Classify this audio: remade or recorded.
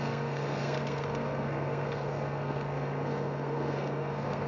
remade